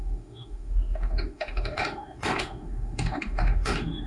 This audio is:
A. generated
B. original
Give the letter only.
A